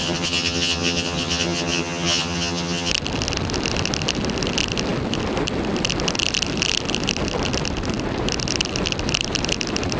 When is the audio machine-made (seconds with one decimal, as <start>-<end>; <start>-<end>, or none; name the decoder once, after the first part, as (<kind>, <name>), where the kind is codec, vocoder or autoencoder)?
0.0-2.9 (vocoder, HiFi-GAN)